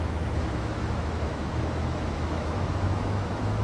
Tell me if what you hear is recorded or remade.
remade